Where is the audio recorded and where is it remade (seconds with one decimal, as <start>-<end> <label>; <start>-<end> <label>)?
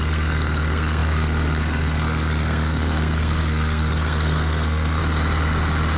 0.0-5.0 remade; 5.0-6.0 recorded